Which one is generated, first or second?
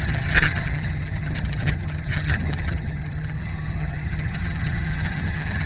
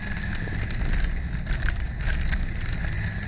first